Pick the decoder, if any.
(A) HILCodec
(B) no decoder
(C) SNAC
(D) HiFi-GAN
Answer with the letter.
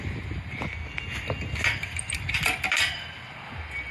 B